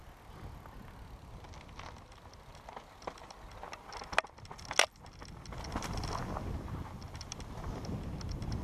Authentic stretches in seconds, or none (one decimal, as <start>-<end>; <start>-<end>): 0.0-8.6